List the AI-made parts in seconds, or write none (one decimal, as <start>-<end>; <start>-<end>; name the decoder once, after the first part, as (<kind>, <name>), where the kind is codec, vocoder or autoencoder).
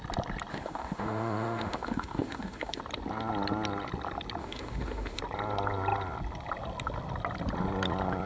0.5-2.8 (autoencoder, DAC-VAE); 4.4-5.2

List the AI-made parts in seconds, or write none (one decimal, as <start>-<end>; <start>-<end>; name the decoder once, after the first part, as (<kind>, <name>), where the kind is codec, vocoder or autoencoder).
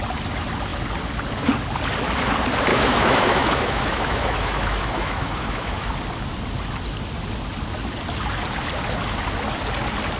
2.7-5.9 (autoencoder, DAC-VAE)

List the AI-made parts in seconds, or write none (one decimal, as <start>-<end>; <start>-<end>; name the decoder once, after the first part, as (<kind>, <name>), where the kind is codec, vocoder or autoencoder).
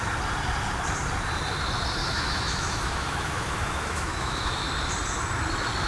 2.0-4.7 (autoencoder, DAC-VAE)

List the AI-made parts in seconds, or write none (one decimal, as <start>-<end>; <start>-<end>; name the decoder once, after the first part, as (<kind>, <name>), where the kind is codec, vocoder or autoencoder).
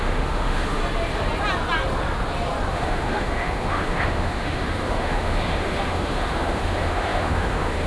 0.0-0.8 (autoencoder, DAC-VAE); 2.7-7.9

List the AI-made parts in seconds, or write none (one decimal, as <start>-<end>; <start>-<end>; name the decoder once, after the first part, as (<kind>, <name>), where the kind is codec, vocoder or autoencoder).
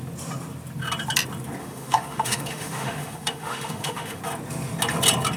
1.6-4.2 (autoencoder, DAC-VAE)